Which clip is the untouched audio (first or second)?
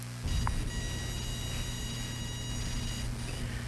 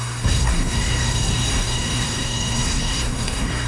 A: first